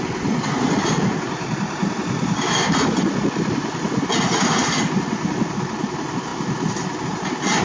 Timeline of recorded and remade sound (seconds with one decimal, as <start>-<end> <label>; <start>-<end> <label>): 0.0-7.6 recorded